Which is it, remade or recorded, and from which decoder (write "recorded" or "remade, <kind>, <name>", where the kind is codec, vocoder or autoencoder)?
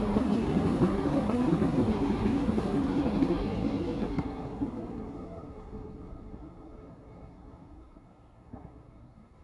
remade, codec, SNAC